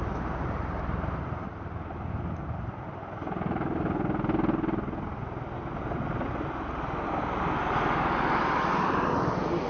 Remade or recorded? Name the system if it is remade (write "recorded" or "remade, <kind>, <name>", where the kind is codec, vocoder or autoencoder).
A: recorded